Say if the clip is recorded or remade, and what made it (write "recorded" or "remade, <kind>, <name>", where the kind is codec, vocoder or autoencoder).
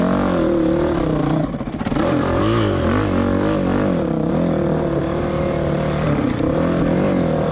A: recorded